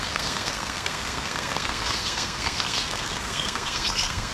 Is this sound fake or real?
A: fake